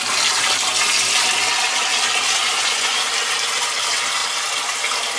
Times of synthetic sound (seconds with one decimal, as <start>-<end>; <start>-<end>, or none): 2.4-3.1